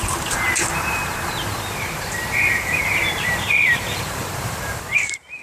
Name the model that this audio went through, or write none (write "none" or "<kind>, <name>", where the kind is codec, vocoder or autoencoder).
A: vocoder, BigVGAN v2